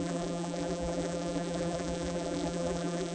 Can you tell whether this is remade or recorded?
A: remade